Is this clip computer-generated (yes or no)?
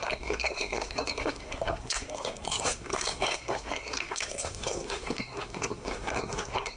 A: yes